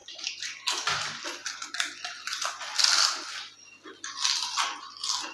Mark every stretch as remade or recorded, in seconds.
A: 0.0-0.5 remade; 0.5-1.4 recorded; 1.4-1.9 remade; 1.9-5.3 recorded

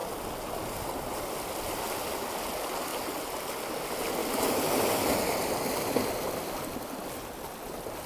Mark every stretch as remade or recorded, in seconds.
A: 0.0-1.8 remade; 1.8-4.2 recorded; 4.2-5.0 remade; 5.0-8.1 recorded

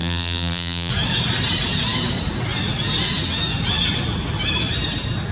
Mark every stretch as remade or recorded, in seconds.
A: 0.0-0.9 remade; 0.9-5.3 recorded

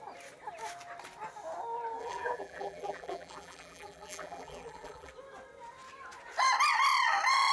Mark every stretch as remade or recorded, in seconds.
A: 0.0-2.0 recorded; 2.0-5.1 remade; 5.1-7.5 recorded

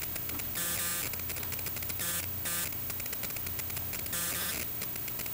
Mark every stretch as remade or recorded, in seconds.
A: 0.0-5.3 recorded